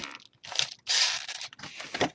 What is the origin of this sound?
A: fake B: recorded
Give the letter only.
B